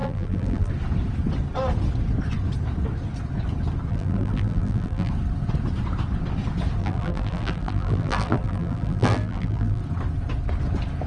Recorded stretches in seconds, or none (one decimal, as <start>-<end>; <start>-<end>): 0.7-3.9; 5.1-6.8; 9.8-11.1